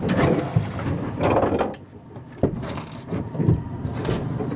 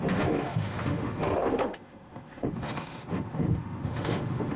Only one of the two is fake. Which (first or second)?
second